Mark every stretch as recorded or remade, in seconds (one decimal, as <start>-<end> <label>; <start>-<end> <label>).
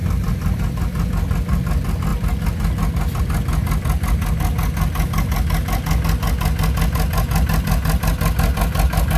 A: 0.0-9.2 recorded